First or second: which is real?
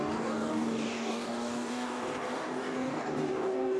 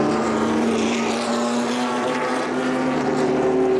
second